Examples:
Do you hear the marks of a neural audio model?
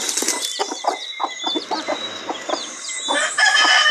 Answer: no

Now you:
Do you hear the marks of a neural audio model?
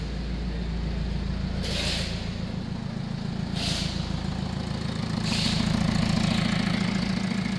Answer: no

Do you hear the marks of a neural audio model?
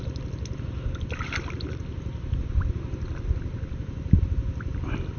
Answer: no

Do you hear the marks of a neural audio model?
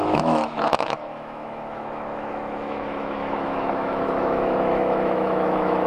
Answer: yes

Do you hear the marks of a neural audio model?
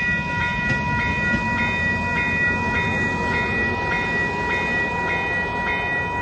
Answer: no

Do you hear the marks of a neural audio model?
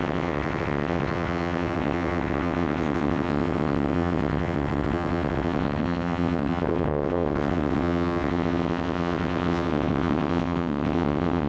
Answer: yes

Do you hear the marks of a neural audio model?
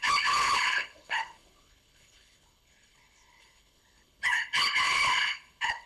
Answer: yes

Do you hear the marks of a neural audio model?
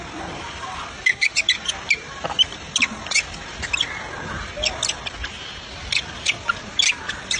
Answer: no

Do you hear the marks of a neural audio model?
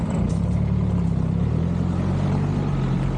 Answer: no